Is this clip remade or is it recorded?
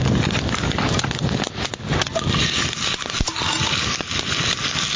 recorded